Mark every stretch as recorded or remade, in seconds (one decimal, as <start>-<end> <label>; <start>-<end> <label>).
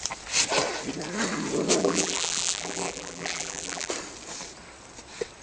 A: 0.0-1.8 recorded; 1.8-3.9 remade; 3.9-5.4 recorded